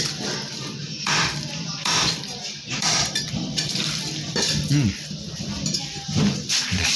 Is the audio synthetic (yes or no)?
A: yes